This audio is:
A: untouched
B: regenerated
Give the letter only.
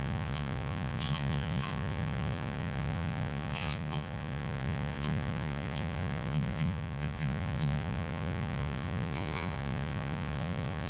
B